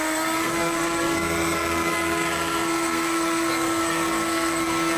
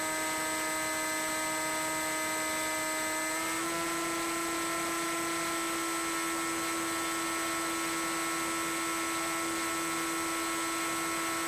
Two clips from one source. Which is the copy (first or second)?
first